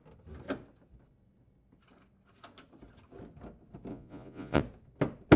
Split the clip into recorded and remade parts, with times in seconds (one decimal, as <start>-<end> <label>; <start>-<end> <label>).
0.0-3.9 recorded; 3.9-4.6 remade; 4.6-5.4 recorded

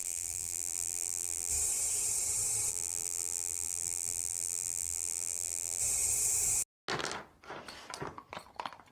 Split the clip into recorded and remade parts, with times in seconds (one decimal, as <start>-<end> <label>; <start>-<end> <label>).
0.0-1.5 remade; 1.5-2.7 recorded; 2.7-5.8 remade; 5.8-8.9 recorded

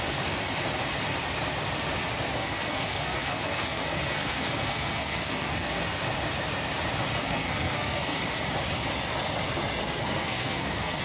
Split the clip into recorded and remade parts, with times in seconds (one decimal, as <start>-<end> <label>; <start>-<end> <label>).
0.0-2.4 recorded; 2.4-5.8 remade; 5.8-7.2 recorded; 7.2-8.2 remade; 8.2-9.8 recorded; 9.8-11.0 remade

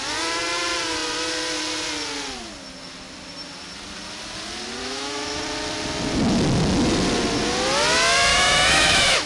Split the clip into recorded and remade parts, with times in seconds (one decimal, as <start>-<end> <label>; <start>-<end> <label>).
0.0-4.8 recorded; 4.8-5.4 remade; 5.4-8.3 recorded; 8.3-9.3 remade